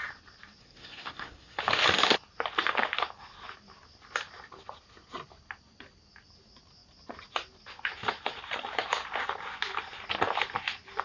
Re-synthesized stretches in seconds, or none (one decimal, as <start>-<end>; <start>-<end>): 0.6-1.6